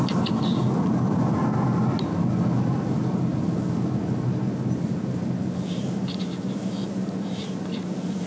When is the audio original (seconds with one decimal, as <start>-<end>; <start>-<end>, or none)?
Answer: 0.0-8.3